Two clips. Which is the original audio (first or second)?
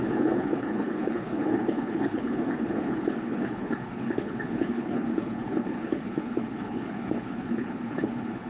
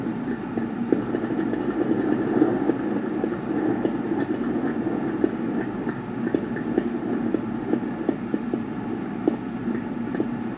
second